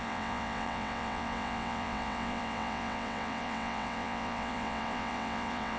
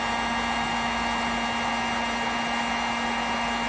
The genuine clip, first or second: second